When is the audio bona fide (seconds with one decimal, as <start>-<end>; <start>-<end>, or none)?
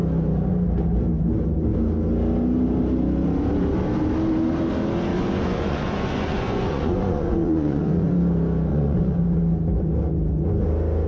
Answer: 0.0-5.1; 8.1-8.7; 9.2-11.1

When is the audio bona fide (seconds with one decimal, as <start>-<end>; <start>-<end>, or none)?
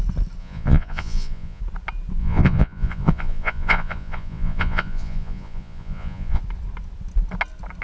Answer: 0.0-0.4; 1.6-2.2; 6.4-7.8